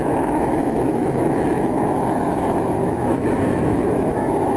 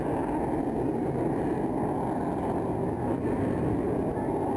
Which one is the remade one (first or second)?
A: first